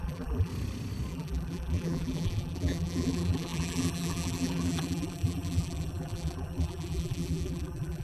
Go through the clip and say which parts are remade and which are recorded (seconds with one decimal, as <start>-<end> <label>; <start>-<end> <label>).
0.0-0.5 remade; 0.5-1.1 recorded; 1.1-8.0 remade